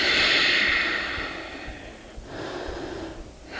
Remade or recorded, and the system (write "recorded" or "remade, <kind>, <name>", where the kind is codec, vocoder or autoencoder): recorded